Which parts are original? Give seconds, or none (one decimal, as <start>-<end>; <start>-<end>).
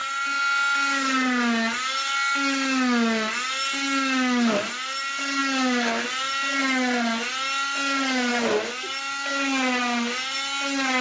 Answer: 0.0-11.0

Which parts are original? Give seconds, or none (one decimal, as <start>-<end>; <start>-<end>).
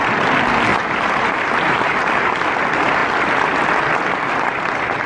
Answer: 0.0-0.7; 2.1-5.1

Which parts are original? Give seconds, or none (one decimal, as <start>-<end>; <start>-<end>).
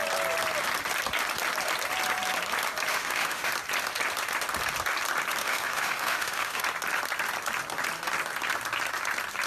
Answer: 0.0-2.9; 3.5-5.4; 6.6-9.5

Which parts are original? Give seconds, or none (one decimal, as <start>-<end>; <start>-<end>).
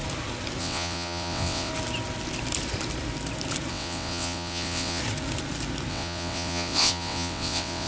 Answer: 0.0-0.6; 1.7-3.7; 5.0-5.9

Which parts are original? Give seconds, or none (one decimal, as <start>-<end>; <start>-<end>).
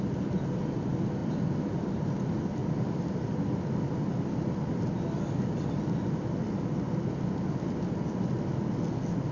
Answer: 0.0-9.3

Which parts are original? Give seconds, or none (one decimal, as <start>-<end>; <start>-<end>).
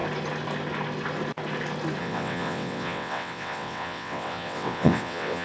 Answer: 0.0-2.0